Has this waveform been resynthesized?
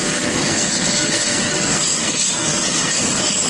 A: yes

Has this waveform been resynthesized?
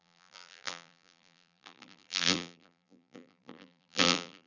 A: yes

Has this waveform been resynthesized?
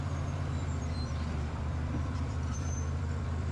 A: yes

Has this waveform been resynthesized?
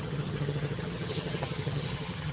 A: yes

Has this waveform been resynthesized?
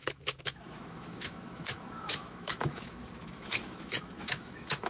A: yes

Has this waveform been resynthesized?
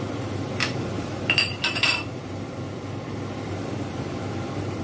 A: yes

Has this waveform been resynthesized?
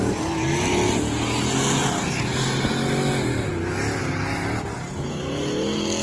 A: no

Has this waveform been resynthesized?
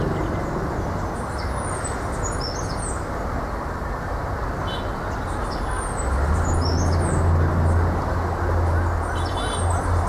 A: no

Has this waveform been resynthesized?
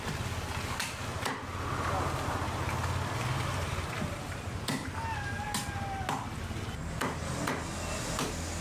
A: no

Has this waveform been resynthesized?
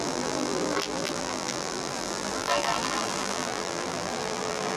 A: yes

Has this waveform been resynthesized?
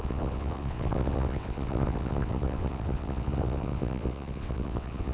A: yes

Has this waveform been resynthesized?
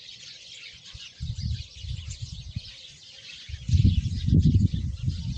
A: yes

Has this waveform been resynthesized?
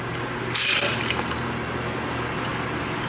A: no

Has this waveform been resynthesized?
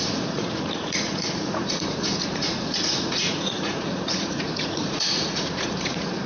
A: yes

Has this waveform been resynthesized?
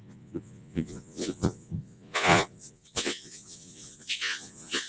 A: yes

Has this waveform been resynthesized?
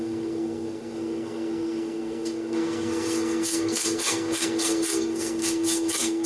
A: yes